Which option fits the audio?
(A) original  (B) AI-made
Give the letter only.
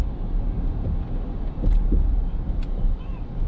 A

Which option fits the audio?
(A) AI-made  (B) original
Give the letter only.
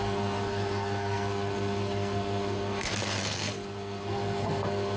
A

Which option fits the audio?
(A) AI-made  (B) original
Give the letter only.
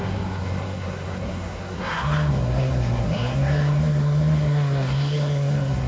A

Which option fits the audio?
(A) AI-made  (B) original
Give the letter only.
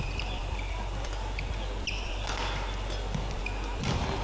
B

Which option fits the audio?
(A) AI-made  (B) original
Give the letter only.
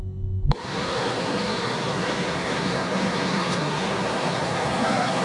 A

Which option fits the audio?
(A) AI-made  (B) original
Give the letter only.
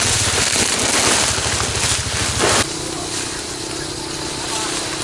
B